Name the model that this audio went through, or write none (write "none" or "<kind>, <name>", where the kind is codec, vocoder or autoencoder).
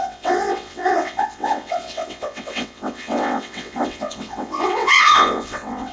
vocoder, WaveNeXt